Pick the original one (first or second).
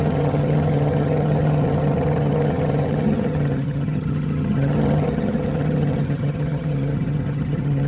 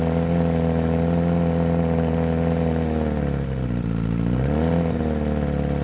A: second